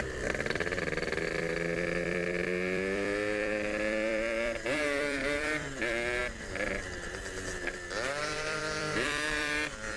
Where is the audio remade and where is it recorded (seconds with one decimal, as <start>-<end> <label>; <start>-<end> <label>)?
0.0-6.2 remade; 6.2-8.2 recorded; 8.2-10.0 remade